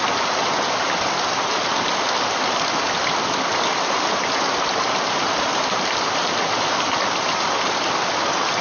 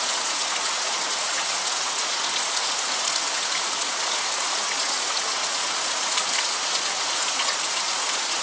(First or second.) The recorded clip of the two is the first